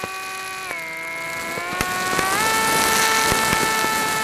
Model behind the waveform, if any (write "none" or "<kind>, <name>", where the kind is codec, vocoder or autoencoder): none